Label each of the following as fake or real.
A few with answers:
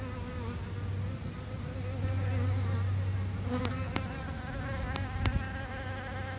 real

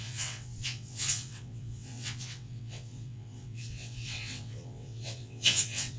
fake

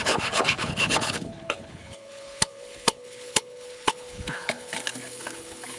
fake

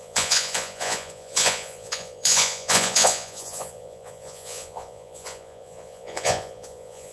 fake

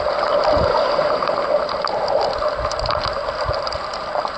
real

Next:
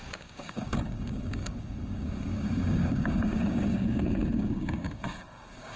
fake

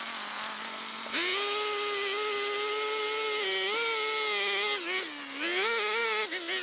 real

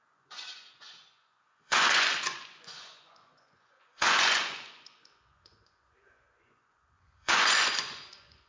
fake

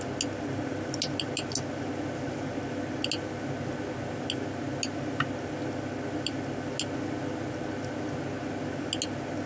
real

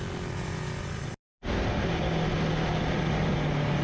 real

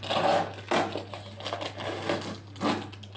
real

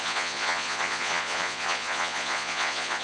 fake